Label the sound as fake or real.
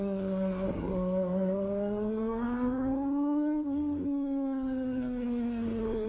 fake